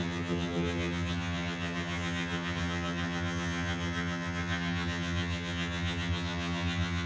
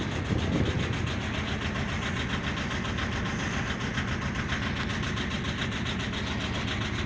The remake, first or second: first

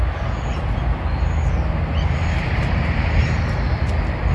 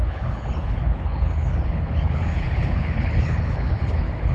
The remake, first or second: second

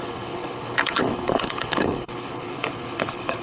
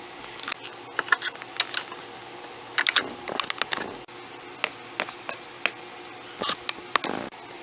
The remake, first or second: first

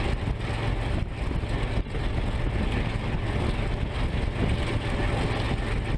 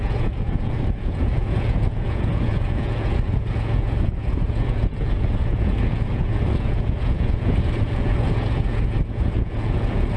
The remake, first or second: second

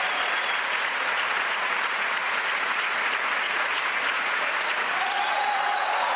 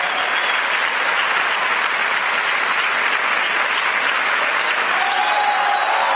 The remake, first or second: first